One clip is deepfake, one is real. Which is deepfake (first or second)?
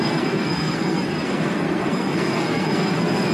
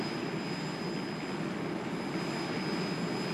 first